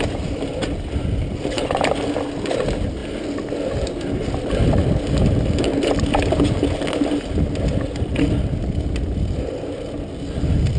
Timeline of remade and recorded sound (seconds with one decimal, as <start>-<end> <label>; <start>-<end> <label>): 0.0-10.8 recorded